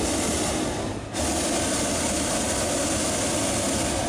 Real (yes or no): yes